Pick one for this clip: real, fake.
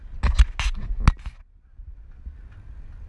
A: real